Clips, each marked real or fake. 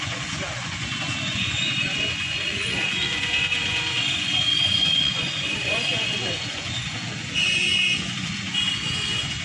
fake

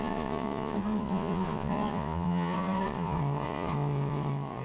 fake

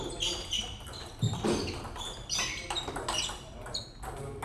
real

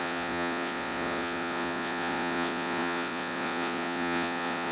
fake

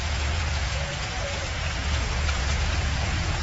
fake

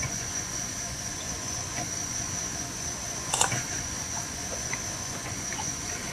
fake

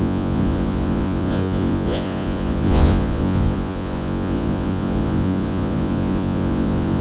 fake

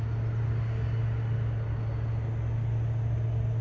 real